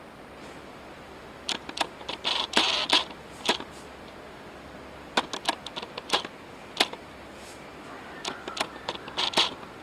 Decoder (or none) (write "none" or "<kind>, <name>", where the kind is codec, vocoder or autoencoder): none